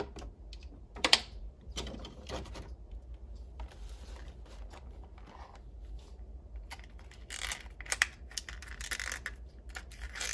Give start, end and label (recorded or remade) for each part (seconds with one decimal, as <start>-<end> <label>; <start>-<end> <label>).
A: 0.0-0.6 recorded; 0.6-4.1 remade; 4.1-10.3 recorded